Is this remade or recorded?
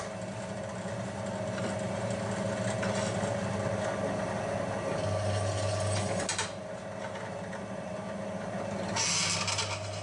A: recorded